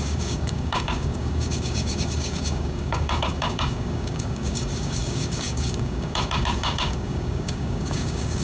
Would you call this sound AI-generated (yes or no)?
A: yes